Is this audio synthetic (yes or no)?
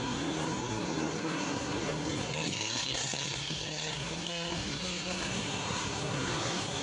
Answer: yes